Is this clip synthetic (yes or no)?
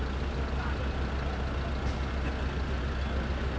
no